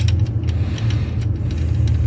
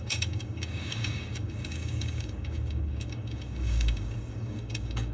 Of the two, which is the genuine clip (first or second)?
first